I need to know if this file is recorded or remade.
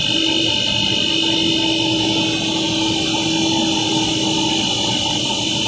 recorded